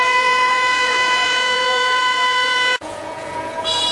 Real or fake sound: fake